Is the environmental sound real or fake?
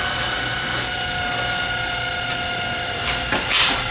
real